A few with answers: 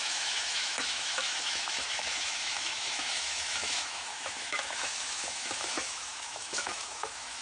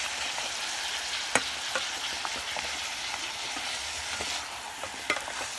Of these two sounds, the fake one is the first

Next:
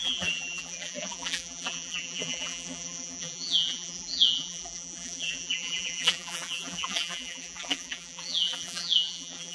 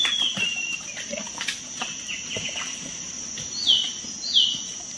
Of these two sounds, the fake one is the first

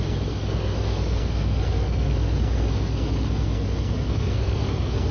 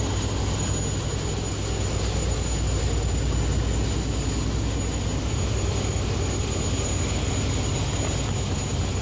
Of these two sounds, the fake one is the first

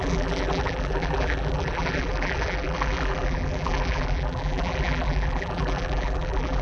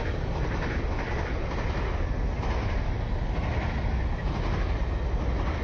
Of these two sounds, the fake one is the first